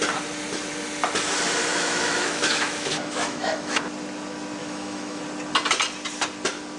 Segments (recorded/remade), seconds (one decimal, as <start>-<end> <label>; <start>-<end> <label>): 0.0-1.7 recorded; 1.7-3.8 remade; 3.8-4.6 recorded; 4.6-5.2 remade; 5.2-6.8 recorded